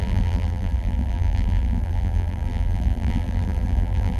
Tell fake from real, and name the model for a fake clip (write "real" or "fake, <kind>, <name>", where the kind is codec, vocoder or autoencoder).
fake, vocoder, BigVGAN v2